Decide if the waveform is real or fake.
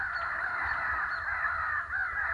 fake